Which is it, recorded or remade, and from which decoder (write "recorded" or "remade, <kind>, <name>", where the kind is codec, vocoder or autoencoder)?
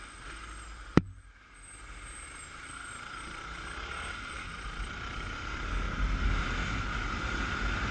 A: recorded